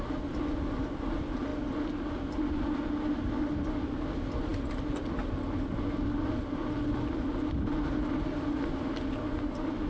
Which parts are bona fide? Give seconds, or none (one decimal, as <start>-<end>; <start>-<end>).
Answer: 0.0-9.9